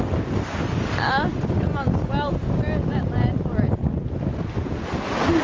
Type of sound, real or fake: real